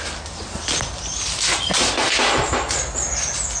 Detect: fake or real real